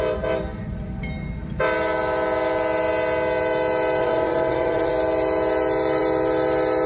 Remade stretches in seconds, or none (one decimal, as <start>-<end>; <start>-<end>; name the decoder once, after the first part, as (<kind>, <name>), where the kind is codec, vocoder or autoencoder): 4.0-4.9 (vocoder, WaveNeXt)